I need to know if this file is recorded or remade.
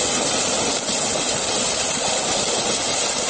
recorded